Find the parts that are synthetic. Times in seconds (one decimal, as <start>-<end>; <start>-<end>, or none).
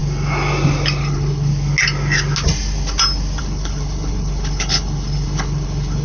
1.0-1.5; 3.4-6.0